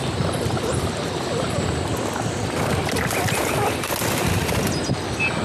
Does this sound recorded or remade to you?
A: recorded